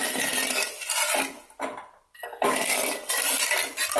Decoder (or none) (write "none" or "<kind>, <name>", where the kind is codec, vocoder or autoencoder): none